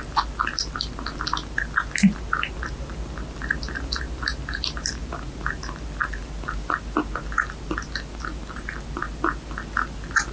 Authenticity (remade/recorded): recorded